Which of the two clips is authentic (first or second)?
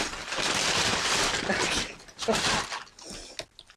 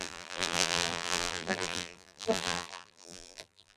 first